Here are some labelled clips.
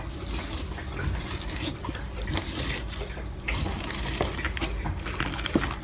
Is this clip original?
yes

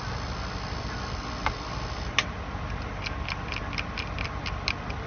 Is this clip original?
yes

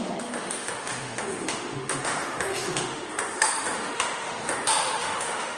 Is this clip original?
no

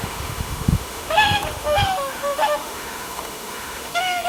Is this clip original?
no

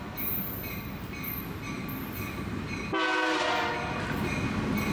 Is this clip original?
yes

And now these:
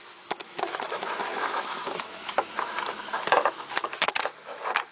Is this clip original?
no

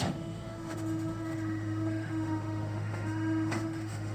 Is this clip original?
no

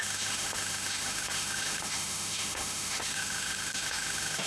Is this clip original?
no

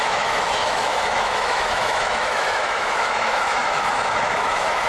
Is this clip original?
no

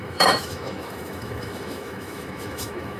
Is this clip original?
no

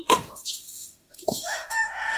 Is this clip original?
no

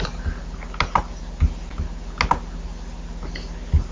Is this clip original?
yes